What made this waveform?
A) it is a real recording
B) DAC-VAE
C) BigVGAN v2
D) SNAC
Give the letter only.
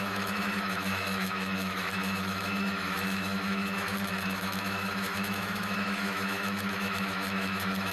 B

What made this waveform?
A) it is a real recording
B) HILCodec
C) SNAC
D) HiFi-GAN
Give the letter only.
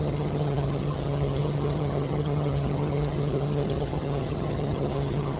D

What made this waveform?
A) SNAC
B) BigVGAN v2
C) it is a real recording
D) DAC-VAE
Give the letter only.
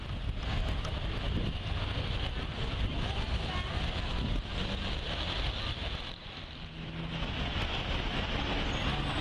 C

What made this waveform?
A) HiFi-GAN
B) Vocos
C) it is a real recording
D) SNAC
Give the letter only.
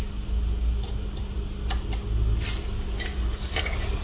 C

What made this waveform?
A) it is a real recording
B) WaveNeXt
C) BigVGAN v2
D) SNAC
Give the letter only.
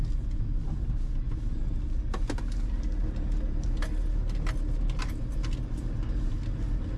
A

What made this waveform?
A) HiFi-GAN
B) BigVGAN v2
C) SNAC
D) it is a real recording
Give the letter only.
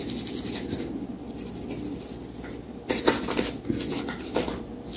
D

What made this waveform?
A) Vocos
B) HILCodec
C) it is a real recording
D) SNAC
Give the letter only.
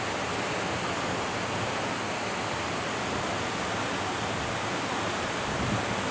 C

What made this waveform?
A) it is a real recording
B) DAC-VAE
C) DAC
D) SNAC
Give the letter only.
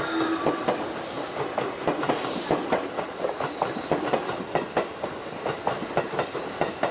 A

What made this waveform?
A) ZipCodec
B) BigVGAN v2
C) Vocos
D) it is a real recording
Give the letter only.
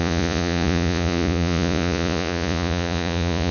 C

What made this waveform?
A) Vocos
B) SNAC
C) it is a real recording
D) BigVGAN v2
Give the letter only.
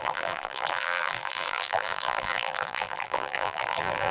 D